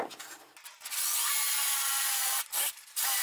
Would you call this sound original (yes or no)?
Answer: yes